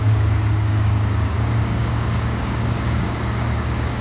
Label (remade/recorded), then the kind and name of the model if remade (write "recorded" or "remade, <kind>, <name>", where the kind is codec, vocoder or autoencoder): remade, codec, DAC